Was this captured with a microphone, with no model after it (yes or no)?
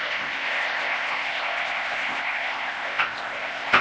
no